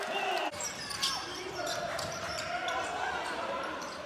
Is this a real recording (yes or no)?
no